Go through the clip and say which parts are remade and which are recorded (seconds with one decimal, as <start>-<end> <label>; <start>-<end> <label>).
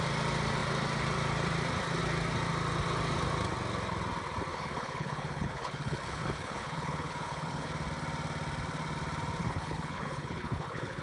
0.0-4.5 recorded; 4.5-7.7 remade; 7.7-9.4 recorded; 9.4-11.0 remade